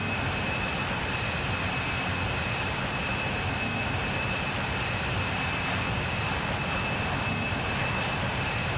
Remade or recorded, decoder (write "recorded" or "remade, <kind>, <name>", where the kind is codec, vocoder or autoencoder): recorded